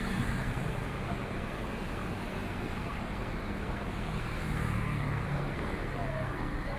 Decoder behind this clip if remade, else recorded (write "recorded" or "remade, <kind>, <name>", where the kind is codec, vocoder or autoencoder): remade, codec, SNAC